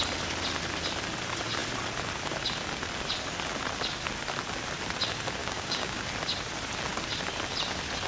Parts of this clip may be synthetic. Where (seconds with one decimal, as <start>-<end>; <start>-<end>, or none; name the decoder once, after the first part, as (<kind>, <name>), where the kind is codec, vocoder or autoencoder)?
5.4-6.0 (codec, DAC)